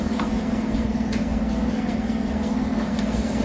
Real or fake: fake